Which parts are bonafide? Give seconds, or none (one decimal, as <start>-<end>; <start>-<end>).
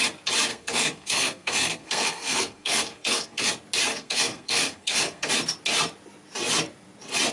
0.0-0.5; 3.5-3.9; 5.3-7.3